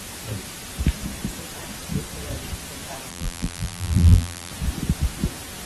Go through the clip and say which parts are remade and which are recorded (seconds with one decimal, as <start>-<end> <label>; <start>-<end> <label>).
0.0-3.1 recorded; 3.1-4.5 remade; 4.5-5.7 recorded